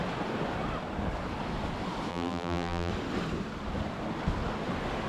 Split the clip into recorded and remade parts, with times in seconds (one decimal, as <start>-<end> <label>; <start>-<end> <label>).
0.0-2.1 recorded; 2.1-2.9 remade; 2.9-5.1 recorded